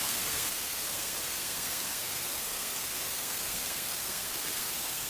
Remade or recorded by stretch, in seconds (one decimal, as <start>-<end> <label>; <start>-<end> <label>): 0.0-5.1 remade